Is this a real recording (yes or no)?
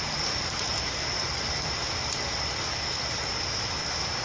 yes